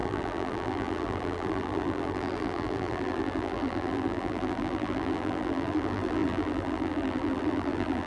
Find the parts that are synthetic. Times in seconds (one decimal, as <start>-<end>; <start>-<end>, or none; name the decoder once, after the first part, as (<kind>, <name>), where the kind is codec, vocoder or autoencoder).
0.0-8.1 (vocoder, BigVGAN v2)